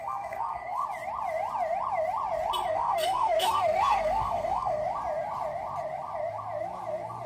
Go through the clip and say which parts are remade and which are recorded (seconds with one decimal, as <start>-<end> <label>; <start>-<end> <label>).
0.0-0.8 remade; 0.8-2.7 recorded; 2.7-4.8 remade; 4.8-7.3 recorded